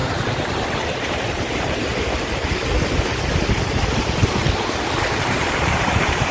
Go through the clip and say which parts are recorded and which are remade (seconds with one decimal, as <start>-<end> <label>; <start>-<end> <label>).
0.0-1.9 remade; 1.9-3.4 recorded; 3.4-4.2 remade; 4.2-5.2 recorded; 5.2-6.3 remade